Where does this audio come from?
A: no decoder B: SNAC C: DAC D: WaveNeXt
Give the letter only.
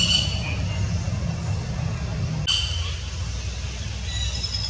A